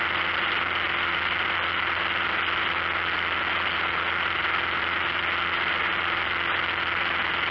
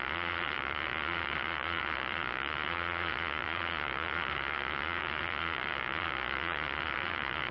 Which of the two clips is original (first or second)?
first